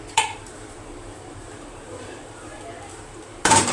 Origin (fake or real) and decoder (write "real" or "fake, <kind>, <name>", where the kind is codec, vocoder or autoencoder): fake, vocoder, BigVGAN v2